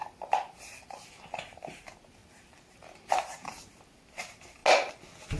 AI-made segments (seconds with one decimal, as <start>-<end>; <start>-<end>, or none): 0.0-1.1; 2.2-3.8